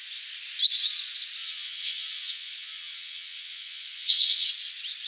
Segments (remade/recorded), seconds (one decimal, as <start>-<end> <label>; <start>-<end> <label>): 0.0-1.4 recorded; 1.4-4.5 remade; 4.5-5.1 recorded